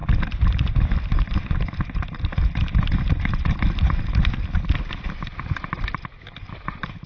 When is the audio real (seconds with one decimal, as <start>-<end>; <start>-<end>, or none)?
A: 4.0-7.1